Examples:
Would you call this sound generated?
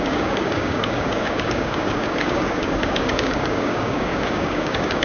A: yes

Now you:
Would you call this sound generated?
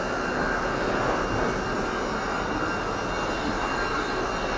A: no